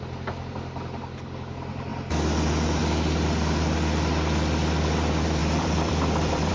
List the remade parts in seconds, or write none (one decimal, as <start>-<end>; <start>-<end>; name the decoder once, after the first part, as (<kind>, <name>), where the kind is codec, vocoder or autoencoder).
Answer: 5.4-6.5 (vocoder, BigVGAN v2)